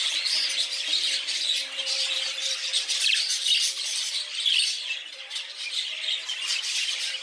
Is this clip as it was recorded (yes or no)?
yes